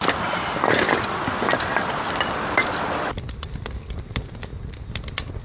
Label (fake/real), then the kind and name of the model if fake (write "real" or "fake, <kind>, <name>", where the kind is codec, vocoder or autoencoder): real